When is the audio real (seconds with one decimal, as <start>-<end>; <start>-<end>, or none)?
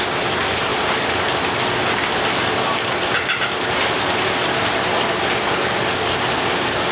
0.0-6.9